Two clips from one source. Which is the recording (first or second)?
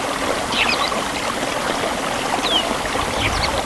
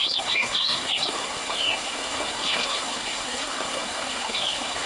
first